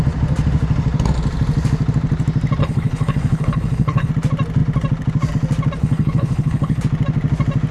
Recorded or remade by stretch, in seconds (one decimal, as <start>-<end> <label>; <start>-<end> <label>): 0.0-2.6 recorded; 2.6-4.1 remade; 4.1-5.8 recorded; 5.8-6.8 remade; 6.8-7.7 recorded